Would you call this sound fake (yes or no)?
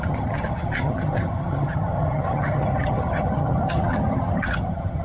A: yes